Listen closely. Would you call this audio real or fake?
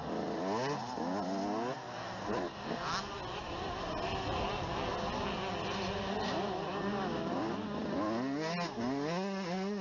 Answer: real